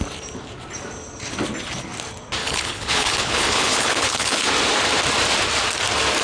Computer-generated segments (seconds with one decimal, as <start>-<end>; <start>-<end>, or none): 2.4-4.5